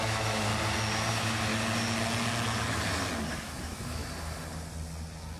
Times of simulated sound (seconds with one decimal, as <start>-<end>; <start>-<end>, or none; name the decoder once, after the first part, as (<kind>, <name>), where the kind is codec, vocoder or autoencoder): 0.0-0.5 (autoencoder, DAC-VAE); 1.1-1.5; 3.3-4.0